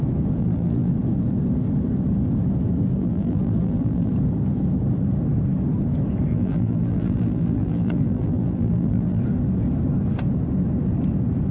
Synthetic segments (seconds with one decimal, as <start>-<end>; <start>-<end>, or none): 0.4-0.9; 3.0-4.1; 6.3-9.2